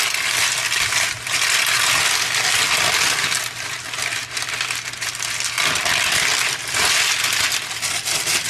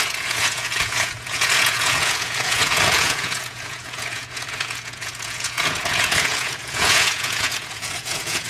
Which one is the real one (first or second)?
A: first